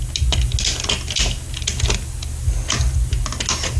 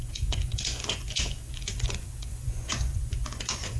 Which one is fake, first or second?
second